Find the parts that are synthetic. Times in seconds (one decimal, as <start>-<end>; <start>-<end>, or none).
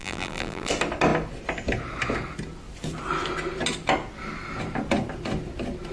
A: 0.0-0.7